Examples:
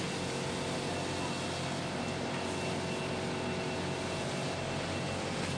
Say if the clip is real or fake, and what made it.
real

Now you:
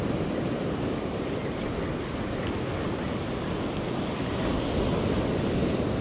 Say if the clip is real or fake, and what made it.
real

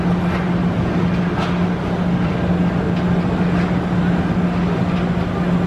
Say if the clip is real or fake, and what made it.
real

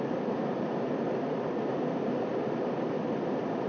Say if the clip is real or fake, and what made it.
fake, vocoder, BigVGAN v2